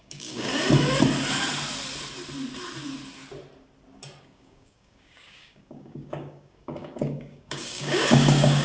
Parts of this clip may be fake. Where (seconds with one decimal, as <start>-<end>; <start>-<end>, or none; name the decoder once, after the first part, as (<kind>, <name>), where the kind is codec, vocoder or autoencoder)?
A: 0.0-0.5 (codec, DAC); 4.2-8.6